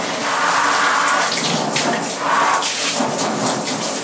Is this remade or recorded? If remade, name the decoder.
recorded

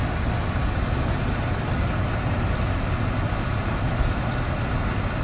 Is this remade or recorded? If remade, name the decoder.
recorded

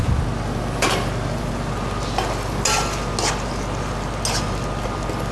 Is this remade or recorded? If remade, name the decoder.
recorded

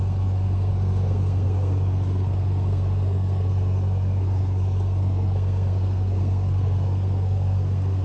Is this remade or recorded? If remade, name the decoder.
remade, codec, SNAC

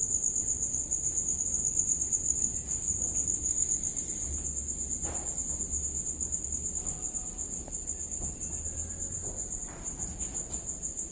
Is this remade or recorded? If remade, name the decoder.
recorded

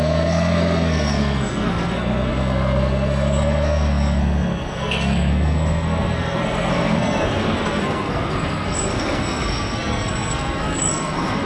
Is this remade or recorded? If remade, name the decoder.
remade, codec, SNAC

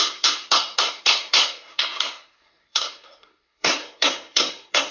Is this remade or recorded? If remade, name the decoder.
remade, codec, SNAC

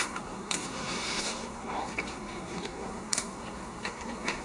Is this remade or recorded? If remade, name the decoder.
remade, codec, SNAC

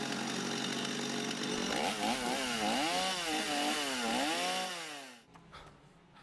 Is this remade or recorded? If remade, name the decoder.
recorded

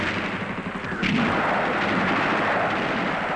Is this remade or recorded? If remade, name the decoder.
recorded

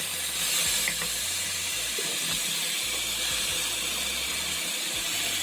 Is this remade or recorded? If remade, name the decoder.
recorded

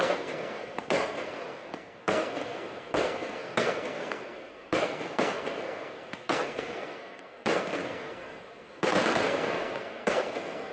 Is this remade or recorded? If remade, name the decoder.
remade, codec, SNAC